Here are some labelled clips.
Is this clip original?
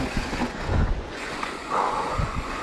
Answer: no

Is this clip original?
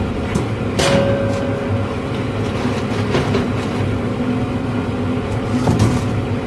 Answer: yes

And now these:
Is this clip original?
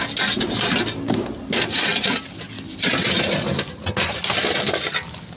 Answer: yes